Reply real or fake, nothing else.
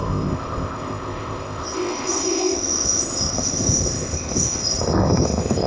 fake